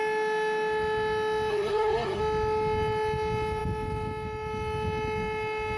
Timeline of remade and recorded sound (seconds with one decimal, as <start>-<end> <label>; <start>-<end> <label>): 0.0-1.5 recorded; 1.5-2.2 remade; 2.2-5.8 recorded